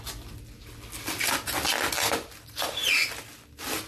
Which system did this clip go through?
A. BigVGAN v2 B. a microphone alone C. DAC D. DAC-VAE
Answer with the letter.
B